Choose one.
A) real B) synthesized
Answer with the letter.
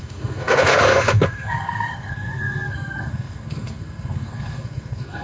B